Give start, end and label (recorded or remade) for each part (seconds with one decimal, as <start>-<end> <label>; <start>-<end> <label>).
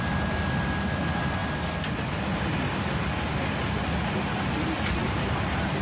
0.0-5.8 recorded